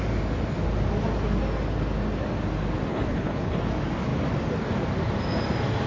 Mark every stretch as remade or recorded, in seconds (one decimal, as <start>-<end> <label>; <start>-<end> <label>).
0.0-2.9 recorded; 2.9-3.6 remade; 3.6-5.9 recorded